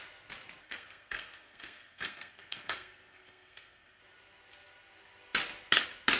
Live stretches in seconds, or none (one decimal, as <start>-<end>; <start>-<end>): 0.0-0.6; 4.0-6.2